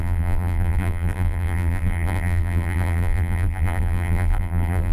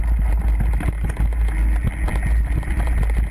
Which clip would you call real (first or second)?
second